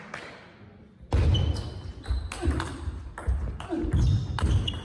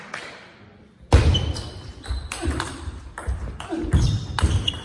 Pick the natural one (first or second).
first